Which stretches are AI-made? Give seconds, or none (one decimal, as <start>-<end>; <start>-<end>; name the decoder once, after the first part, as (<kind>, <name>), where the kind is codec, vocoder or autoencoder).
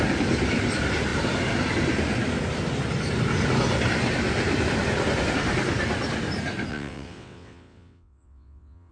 6.7-8.9 (vocoder, WaveNeXt)